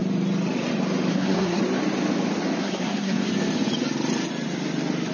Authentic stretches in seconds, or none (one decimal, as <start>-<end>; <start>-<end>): 0.0-1.1; 1.6-2.6; 3.3-5.1